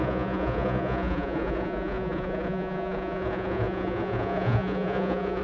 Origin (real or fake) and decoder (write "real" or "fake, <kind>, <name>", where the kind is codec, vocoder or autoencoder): fake, vocoder, Vocos